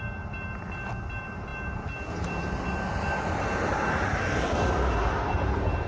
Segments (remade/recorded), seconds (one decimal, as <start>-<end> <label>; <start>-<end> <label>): 0.0-5.9 recorded